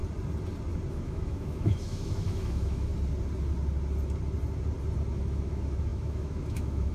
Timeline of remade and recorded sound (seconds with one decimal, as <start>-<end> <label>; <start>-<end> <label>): 0.0-0.9 recorded; 0.9-2.9 remade; 2.9-5.1 recorded; 5.1-6.9 remade